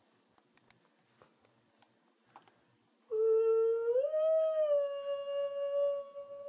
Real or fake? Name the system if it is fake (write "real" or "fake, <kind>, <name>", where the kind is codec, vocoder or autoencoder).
real